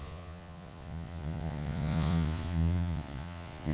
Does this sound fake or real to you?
fake